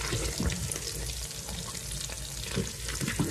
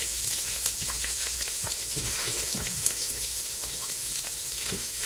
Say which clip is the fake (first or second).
second